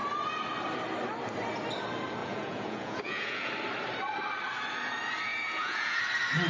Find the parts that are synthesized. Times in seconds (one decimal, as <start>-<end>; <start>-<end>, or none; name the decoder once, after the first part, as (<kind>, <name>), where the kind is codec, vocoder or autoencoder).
2.2-3.5 (vocoder, Vocos); 5.3-6.0